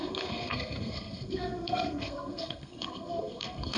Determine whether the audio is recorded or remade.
remade